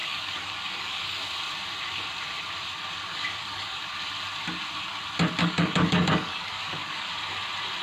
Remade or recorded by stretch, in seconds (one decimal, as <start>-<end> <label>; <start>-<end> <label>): 0.0-1.2 remade; 1.2-3.1 recorded; 3.1-3.8 remade; 3.8-5.4 recorded; 5.4-7.1 remade; 7.1-7.8 recorded